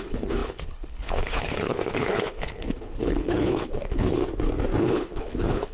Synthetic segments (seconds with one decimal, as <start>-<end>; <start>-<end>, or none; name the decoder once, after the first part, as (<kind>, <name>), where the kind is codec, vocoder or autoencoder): 0.0-4.2 (codec, HILCodec); 4.8-5.7